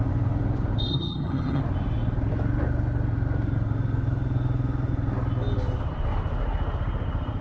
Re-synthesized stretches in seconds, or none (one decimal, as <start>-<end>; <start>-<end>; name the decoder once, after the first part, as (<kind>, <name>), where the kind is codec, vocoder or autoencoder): 0.9-1.6 (vocoder, HiFi-GAN)